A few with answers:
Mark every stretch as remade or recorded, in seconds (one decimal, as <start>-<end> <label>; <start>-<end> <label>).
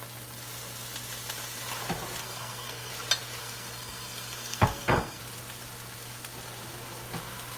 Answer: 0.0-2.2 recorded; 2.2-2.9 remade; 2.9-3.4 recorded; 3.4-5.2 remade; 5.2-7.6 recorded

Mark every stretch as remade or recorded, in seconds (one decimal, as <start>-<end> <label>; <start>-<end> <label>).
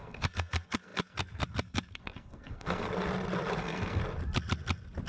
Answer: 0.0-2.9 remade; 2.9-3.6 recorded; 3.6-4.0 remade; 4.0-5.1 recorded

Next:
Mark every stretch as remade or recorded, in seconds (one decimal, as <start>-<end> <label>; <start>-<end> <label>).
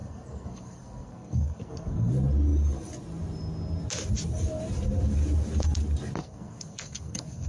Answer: 0.0-2.1 remade; 2.1-6.2 recorded; 6.2-7.5 remade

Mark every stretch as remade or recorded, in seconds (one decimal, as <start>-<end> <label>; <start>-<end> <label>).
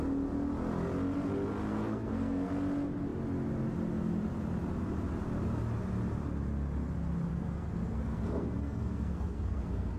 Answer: 0.0-1.7 recorded; 1.7-2.5 remade; 2.5-7.3 recorded; 7.3-10.0 remade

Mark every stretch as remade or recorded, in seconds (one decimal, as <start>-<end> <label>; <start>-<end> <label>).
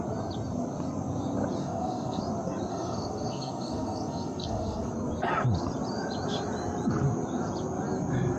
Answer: 0.0-1.6 recorded; 1.6-2.2 remade; 2.2-2.7 recorded; 2.7-4.9 remade; 4.9-8.4 recorded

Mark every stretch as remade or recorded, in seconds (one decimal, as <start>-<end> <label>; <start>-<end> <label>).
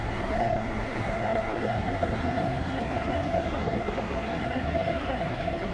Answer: 0.0-5.7 remade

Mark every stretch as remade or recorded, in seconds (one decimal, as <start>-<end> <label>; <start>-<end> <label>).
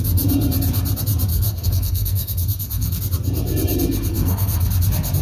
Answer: 0.0-1.3 recorded; 1.3-3.0 remade; 3.0-4.1 recorded; 4.1-4.7 remade; 4.7-5.2 recorded